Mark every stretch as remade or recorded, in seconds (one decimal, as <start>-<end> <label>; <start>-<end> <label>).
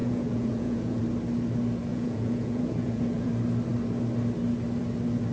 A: 0.0-1.0 remade; 1.0-1.9 recorded; 1.9-3.3 remade; 3.3-5.3 recorded